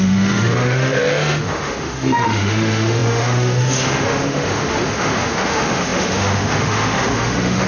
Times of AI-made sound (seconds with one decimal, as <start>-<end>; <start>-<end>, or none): 0.0-7.7

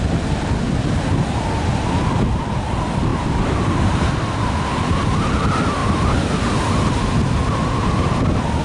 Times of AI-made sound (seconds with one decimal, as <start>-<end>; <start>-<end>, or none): none

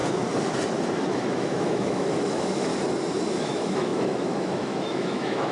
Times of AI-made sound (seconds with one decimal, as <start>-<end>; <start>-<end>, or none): 1.1-2.7; 3.4-5.5